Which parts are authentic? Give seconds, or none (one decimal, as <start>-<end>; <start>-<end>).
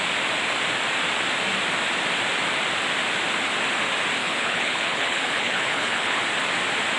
0.0-4.2; 6.2-7.0